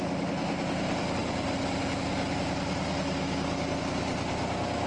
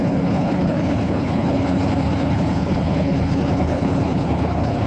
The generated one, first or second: second